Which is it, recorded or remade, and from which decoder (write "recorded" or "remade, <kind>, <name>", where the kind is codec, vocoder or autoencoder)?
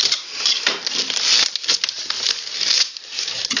recorded